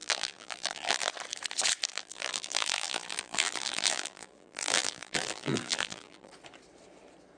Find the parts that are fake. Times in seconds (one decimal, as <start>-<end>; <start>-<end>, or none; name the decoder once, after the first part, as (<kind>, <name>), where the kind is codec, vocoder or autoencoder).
0.0-1.1 (vocoder, BigVGAN v2); 1.9-6.3